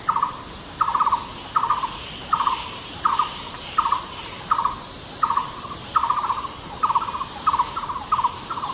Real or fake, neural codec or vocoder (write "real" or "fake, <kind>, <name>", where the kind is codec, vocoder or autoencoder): real